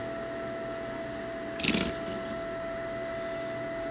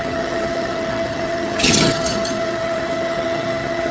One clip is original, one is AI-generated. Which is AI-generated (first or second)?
second